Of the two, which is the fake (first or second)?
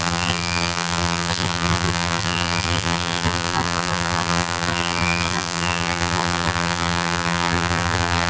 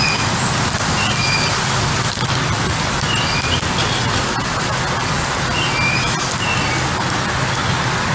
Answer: first